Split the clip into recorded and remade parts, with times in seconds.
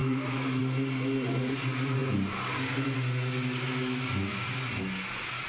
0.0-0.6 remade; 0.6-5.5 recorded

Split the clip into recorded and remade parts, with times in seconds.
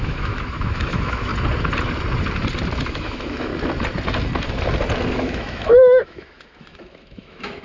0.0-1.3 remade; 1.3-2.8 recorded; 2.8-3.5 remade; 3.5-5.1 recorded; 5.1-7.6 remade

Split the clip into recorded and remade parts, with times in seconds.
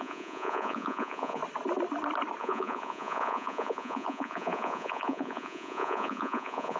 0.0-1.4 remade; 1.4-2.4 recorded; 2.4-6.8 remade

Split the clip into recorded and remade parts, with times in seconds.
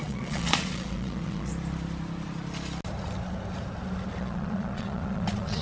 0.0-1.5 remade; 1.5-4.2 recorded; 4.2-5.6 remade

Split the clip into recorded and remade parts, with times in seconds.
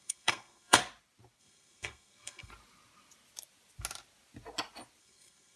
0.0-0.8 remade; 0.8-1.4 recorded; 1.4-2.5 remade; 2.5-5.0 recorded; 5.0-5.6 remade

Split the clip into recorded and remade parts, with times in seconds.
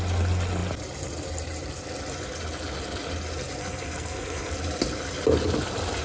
0.0-3.6 recorded; 3.6-4.5 remade; 4.5-6.0 recorded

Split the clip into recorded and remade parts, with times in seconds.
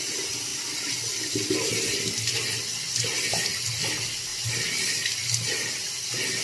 0.0-6.4 recorded